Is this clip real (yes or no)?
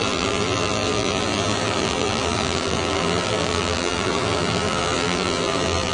no